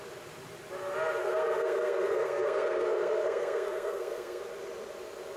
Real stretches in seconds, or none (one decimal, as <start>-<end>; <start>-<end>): 0.0-1.2; 4.4-5.4